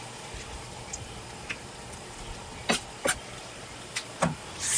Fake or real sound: real